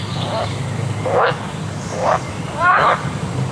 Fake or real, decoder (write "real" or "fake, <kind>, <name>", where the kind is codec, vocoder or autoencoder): fake, codec, DAC